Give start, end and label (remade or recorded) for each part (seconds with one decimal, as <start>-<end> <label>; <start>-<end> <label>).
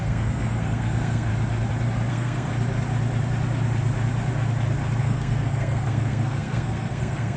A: 0.0-1.3 remade; 1.3-2.1 recorded; 2.1-2.5 remade; 2.5-5.0 recorded; 5.0-7.4 remade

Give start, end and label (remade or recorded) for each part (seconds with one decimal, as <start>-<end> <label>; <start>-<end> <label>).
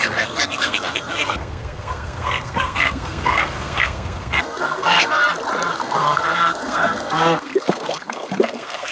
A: 0.0-5.2 remade; 5.2-5.7 recorded; 5.7-8.9 remade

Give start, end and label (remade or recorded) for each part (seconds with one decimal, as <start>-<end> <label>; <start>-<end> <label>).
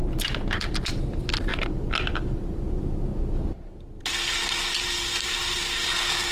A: 0.0-6.3 recorded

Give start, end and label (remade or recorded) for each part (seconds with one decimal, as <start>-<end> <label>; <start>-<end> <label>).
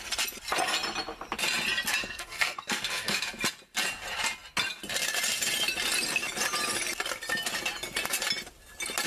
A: 0.0-2.0 recorded; 2.0-3.2 remade; 3.2-9.1 recorded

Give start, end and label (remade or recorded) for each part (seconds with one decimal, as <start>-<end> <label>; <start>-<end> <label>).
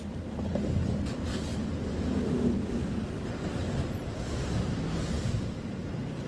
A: 0.0-6.3 recorded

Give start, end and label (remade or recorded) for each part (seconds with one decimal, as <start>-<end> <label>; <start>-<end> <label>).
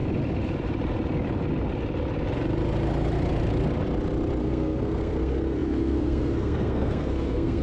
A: 0.0-4.4 recorded; 4.4-7.6 remade